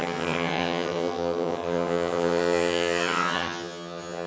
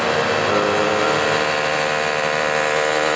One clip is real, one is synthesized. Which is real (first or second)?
second